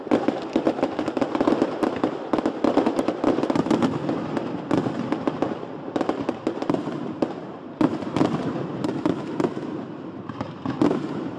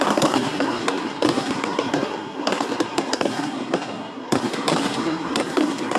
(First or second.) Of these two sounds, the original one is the first